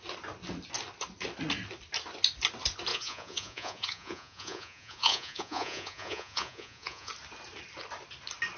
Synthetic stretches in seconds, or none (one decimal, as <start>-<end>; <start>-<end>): 2.9-7.1